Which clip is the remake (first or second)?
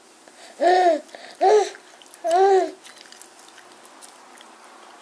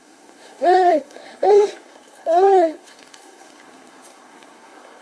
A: second